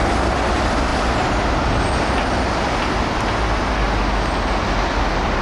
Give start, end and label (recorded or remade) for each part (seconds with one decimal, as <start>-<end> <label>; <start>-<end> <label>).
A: 0.0-5.4 recorded

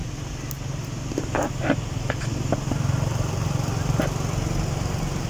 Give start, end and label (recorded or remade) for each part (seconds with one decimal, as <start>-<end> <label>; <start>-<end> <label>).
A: 0.0-5.3 recorded

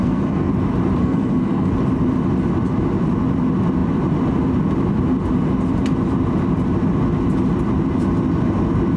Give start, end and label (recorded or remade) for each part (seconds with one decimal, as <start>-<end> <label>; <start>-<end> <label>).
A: 0.0-0.5 remade; 0.5-1.0 recorded; 1.0-1.7 remade; 1.7-9.0 recorded

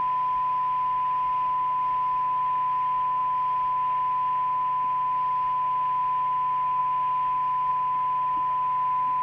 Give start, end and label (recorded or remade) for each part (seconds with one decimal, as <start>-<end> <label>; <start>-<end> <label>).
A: 0.0-9.2 recorded

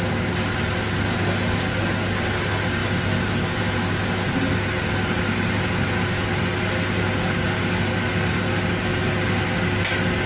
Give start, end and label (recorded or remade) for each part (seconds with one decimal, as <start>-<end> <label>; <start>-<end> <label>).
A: 0.0-10.3 recorded

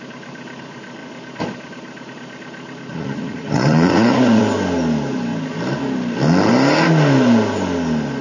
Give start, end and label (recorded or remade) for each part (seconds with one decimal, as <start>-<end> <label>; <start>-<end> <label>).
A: 0.0-2.9 recorded; 2.9-4.4 remade; 4.4-8.2 recorded

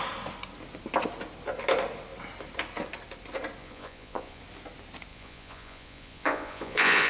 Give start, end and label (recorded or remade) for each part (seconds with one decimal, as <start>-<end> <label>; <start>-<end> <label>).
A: 0.0-3.6 recorded; 3.6-4.4 remade; 4.4-5.1 recorded; 5.1-7.1 remade

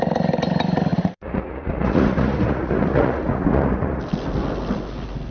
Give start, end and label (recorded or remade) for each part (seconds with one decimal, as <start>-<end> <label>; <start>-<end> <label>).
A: 0.0-0.9 recorded; 0.9-4.0 remade; 4.0-5.3 recorded